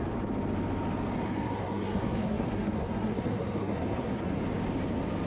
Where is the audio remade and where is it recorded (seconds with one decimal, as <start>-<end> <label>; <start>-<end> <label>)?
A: 0.0-1.2 recorded; 1.2-4.4 remade; 4.4-5.3 recorded